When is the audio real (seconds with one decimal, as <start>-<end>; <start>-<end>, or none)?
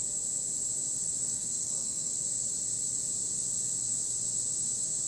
0.0-1.2; 2.1-5.1